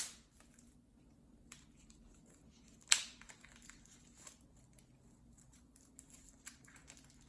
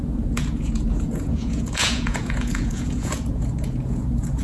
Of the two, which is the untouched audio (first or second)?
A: first